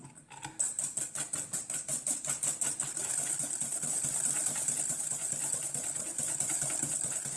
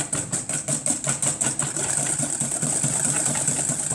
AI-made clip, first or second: second